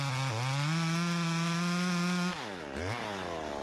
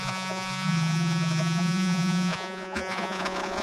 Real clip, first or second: first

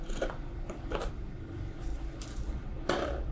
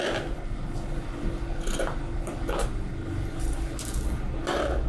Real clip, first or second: second